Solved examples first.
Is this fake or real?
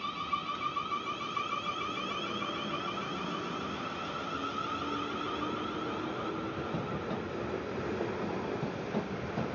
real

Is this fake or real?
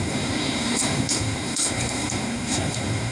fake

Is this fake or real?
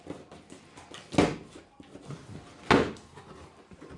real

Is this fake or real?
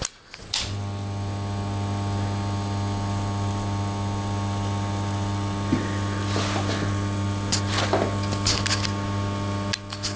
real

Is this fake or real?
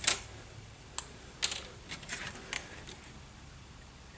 real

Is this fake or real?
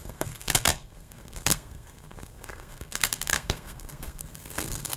fake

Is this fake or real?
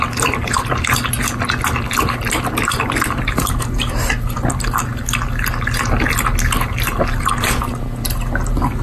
real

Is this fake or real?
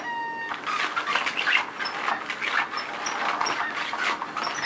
real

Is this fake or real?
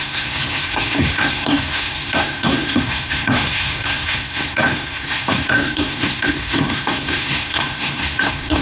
fake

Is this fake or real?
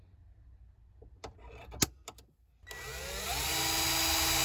real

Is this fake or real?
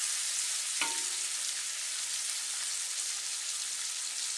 real